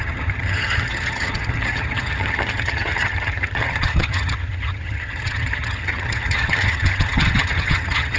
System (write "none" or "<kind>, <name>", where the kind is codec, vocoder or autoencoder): vocoder, HiFi-GAN